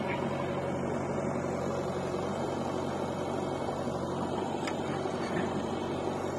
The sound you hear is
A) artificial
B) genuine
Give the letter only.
B